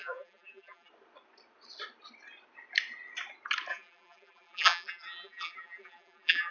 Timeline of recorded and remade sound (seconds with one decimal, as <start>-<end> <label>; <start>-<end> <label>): 0.0-0.9 remade; 0.9-3.7 recorded; 3.7-6.5 remade